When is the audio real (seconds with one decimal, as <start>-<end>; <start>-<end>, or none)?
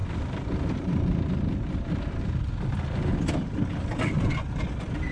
0.0-5.1